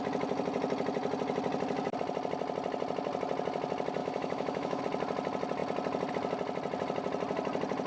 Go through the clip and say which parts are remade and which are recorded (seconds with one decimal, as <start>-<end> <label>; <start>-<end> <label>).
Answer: 0.0-4.0 recorded; 4.0-4.8 remade; 4.8-7.9 recorded